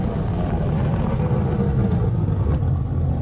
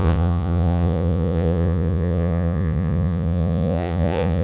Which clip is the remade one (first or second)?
second